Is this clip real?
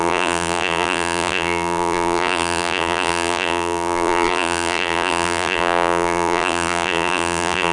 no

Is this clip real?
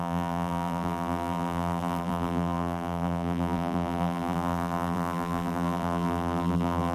no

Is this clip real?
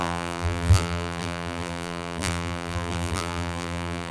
no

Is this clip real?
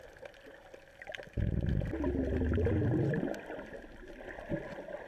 yes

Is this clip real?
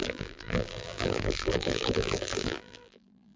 no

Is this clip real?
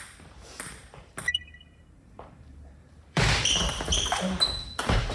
no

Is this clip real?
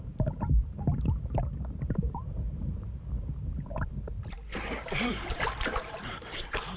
no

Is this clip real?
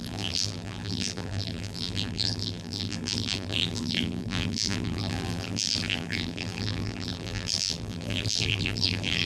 no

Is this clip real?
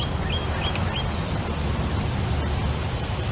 yes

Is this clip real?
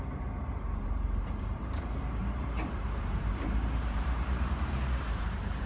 no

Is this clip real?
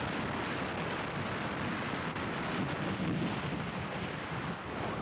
yes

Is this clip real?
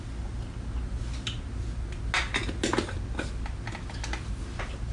yes